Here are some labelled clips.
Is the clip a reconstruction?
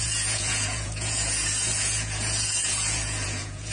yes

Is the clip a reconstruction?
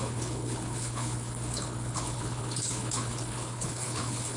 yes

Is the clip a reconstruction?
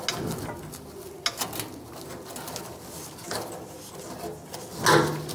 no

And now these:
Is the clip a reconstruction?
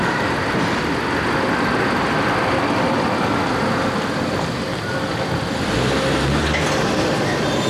no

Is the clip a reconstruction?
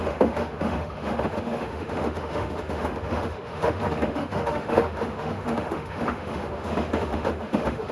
yes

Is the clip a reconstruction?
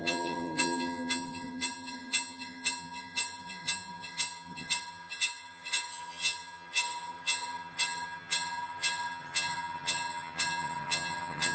yes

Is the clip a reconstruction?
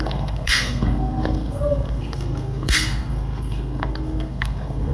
yes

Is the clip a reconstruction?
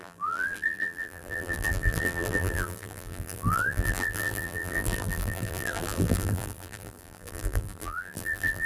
yes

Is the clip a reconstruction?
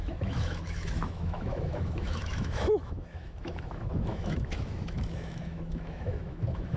yes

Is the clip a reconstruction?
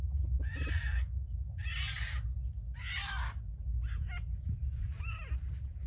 no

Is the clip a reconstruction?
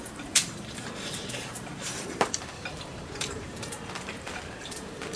yes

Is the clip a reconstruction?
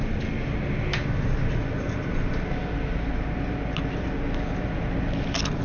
no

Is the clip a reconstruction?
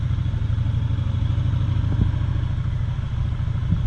no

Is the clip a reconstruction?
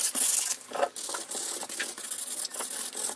no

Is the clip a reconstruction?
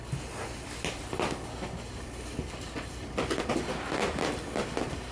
no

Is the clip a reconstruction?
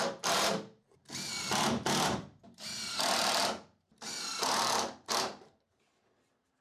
yes